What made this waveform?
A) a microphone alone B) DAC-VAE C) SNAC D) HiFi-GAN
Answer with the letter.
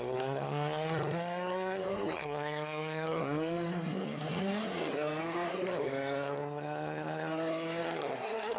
C